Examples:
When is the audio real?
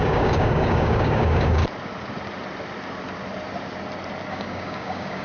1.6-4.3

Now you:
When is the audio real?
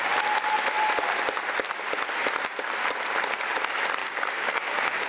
0.0-4.0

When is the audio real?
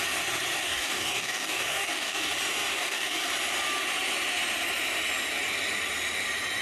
0.0-0.6; 2.3-2.7; 3.3-6.6